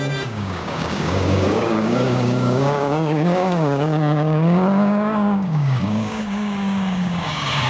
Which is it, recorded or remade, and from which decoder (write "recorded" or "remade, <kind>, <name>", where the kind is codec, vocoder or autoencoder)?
remade, codec, DAC